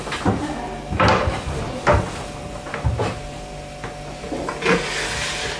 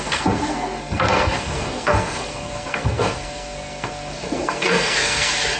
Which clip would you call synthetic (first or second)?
second